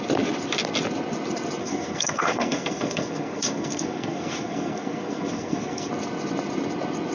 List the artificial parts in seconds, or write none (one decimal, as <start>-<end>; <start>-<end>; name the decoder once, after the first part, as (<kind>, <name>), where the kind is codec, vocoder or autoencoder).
1.6-5.9 (codec, SNAC)